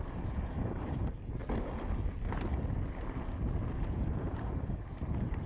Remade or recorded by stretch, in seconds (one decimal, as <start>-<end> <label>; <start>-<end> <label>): 0.0-1.4 remade; 1.4-3.7 recorded; 3.7-5.5 remade